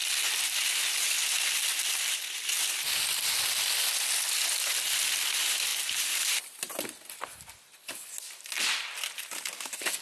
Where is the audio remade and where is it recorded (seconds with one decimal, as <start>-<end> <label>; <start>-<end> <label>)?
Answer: 0.0-5.7 recorded; 5.7-6.8 remade; 6.8-10.0 recorded